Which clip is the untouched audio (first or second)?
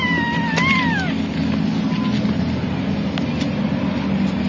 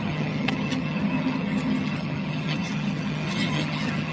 first